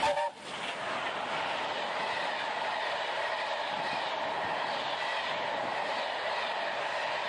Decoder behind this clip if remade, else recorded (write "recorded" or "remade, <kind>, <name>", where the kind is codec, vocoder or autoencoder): recorded